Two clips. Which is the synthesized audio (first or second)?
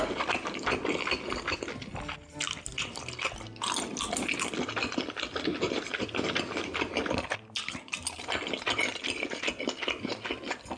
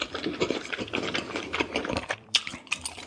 second